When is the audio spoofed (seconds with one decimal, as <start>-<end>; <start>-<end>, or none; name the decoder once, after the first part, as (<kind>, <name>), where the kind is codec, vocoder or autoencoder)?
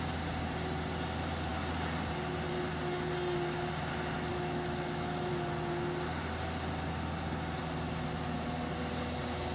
4.3-5.3 (autoencoder, DAC-VAE)